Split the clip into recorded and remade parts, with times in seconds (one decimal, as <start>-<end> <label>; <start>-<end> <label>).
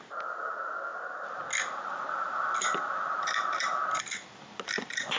0.0-5.2 recorded